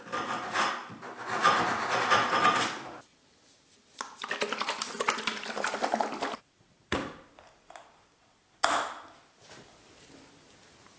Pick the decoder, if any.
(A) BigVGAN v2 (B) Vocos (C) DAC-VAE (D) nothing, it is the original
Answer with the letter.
D